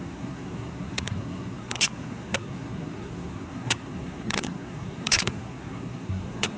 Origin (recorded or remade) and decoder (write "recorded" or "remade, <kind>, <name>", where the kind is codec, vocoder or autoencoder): remade, codec, SNAC